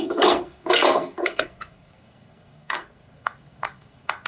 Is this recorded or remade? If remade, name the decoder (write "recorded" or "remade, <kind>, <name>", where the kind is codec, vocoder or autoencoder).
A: remade, codec, SNAC